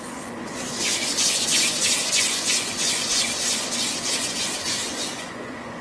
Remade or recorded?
remade